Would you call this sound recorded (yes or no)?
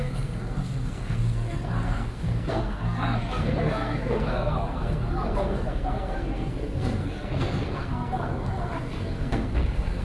no